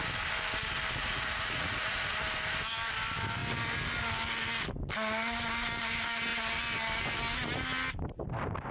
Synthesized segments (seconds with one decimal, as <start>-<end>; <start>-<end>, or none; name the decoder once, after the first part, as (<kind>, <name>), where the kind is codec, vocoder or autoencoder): 1.0-2.1 (vocoder, Vocos)